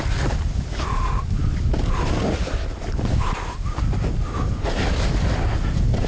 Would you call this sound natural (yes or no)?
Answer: yes